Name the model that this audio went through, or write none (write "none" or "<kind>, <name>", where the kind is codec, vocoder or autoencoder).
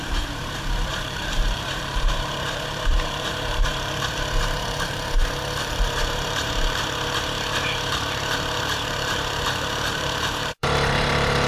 vocoder, BigVGAN v2